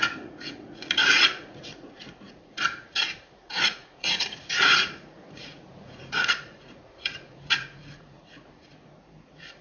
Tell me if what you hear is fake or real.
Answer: fake